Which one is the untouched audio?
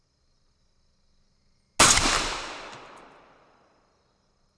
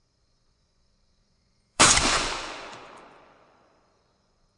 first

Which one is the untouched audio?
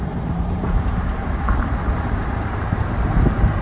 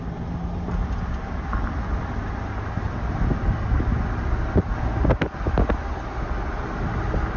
second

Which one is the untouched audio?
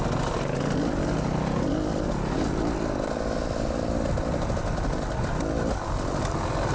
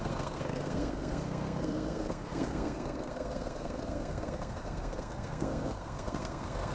first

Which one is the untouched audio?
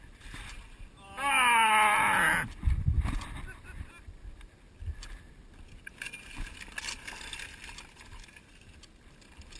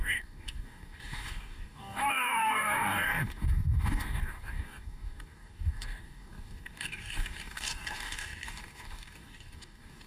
first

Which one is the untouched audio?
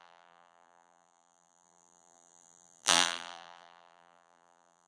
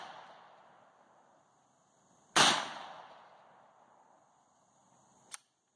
second